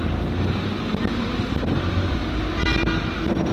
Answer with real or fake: real